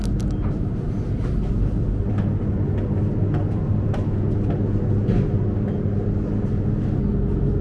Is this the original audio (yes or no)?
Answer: yes